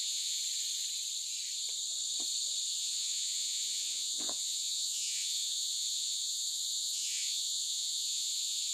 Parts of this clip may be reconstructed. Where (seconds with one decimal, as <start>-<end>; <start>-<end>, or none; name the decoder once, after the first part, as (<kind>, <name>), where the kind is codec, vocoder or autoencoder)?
0.0-0.4 (vocoder, Vocos); 2.7-8.7